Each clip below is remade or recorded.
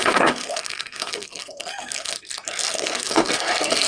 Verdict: remade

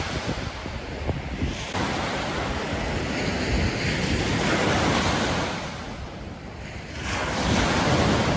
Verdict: recorded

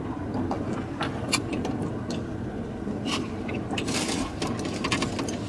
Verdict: recorded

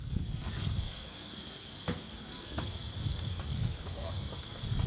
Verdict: remade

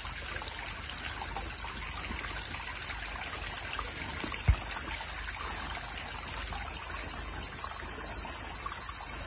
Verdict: recorded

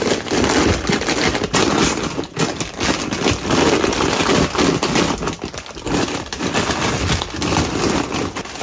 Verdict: recorded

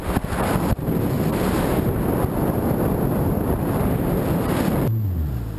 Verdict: recorded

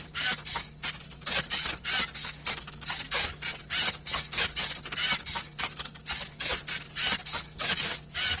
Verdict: recorded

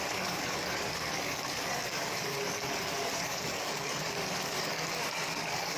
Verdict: remade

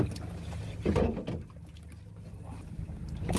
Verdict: recorded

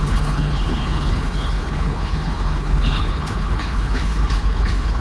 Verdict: remade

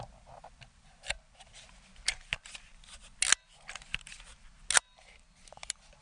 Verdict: recorded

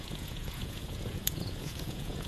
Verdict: remade